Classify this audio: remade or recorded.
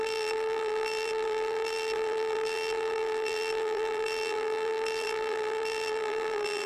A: remade